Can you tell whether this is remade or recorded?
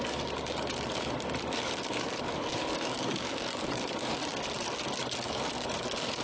remade